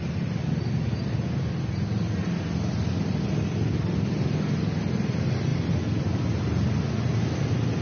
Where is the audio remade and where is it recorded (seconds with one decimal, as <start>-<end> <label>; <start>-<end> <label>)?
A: 0.0-7.8 recorded